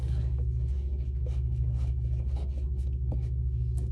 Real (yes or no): no